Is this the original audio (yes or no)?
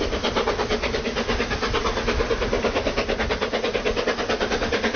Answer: yes